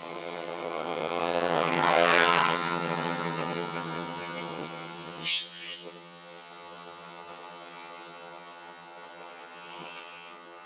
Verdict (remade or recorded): remade